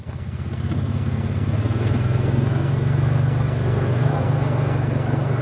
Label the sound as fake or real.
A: fake